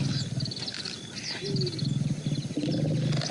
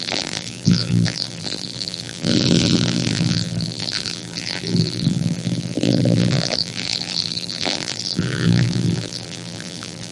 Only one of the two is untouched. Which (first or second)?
first